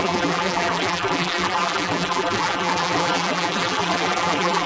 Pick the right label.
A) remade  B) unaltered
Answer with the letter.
A